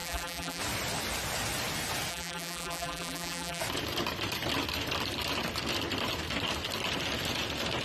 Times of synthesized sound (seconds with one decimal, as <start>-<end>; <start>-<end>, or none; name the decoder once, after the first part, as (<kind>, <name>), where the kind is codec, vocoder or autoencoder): 0.0-0.6 (vocoder, BigVGAN v2); 2.1-3.6